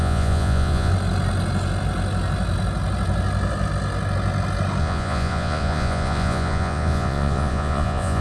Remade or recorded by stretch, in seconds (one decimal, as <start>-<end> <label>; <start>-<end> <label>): 0.0-0.9 remade; 0.9-4.8 recorded; 4.8-8.2 remade